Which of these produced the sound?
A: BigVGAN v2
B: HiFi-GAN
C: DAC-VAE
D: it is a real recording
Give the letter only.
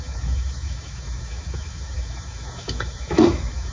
C